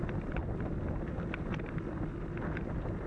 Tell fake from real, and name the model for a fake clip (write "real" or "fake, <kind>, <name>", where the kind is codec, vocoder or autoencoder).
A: real